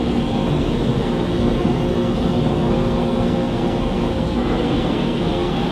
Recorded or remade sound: remade